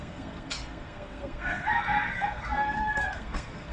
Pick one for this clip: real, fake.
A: fake